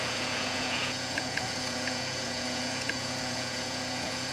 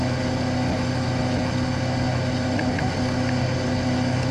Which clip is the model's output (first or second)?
first